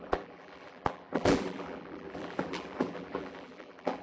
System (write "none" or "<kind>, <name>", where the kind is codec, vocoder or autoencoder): vocoder, BigVGAN v2